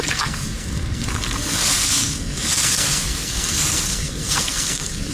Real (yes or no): no